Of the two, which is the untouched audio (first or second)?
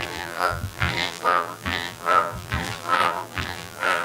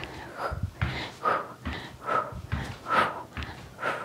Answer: second